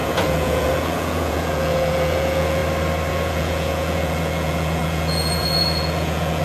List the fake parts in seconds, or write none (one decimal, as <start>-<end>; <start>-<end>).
0.0-2.6; 3.1-6.4